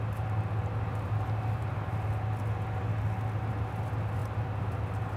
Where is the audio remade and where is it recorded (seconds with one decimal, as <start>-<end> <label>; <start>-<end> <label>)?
0.0-0.9 recorded; 0.9-2.1 remade; 2.1-5.2 recorded